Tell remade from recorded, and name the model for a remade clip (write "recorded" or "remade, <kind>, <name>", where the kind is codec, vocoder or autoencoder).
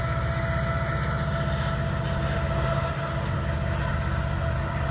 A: recorded